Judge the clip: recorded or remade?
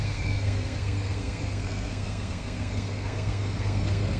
remade